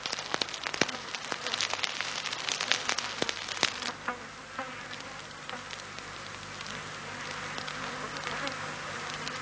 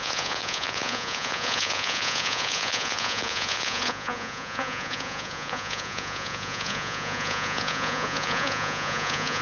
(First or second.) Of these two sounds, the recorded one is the first